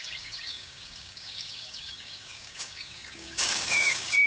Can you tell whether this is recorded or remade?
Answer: remade